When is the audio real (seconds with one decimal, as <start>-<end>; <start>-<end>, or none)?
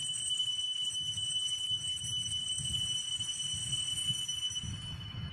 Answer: 2.6-4.7